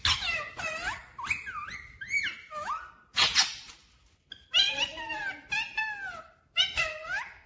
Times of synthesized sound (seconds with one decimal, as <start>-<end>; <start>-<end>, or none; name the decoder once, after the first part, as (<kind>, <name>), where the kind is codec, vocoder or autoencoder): none

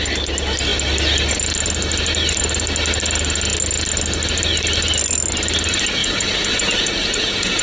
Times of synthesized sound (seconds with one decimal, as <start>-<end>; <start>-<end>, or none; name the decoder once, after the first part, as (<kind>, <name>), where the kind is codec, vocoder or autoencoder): 6.0-7.6 (vocoder, Vocos)